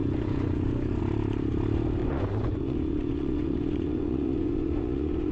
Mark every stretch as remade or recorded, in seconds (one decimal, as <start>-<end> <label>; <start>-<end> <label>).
0.0-1.0 remade; 1.0-2.0 recorded; 2.0-5.3 remade